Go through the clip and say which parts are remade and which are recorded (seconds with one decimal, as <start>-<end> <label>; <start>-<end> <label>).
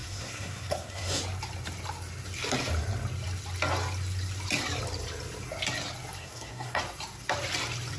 0.0-1.2 remade; 1.2-6.2 recorded; 6.2-6.8 remade; 6.8-8.0 recorded